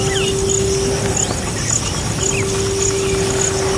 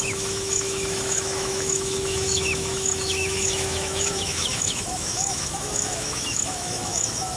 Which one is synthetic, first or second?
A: second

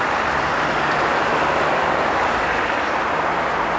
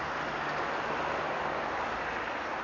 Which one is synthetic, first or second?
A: first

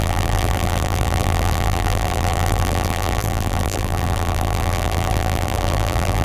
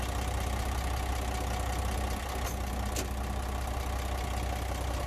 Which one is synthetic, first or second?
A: first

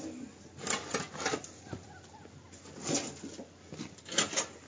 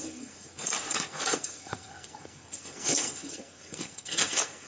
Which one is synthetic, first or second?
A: second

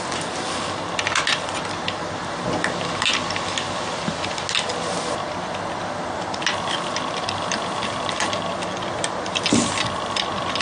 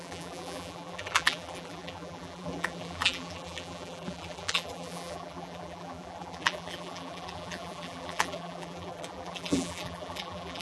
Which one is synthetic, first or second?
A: second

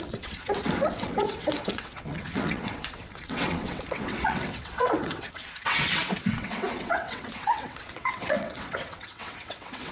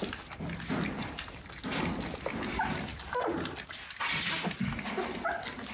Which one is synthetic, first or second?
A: first